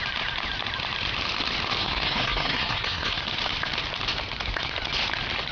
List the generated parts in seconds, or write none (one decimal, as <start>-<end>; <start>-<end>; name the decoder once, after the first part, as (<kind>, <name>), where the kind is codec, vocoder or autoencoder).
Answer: 1.8-3.2 (codec, SNAC)